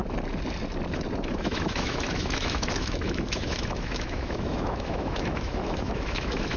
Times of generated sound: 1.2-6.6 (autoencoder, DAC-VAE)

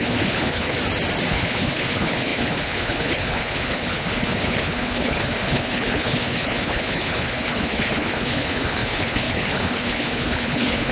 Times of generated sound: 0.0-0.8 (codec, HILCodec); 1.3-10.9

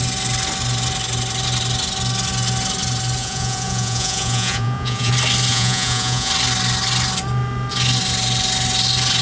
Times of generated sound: 3.2-5.1 (vocoder, Vocos); 5.5-6.3